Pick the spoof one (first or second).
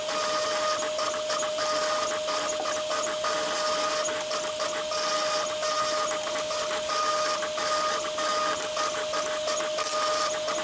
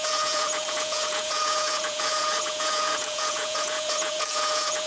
second